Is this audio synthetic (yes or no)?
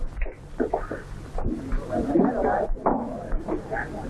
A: yes